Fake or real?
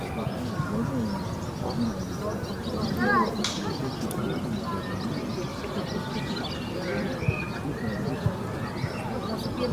real